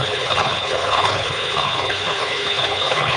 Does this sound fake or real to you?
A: fake